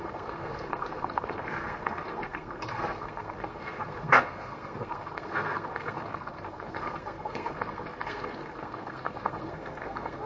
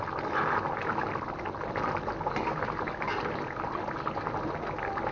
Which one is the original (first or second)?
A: second